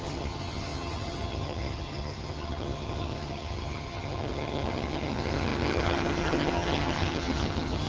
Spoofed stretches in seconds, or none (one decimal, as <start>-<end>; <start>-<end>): 0.0-7.9